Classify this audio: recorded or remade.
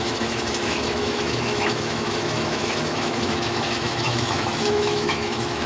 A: remade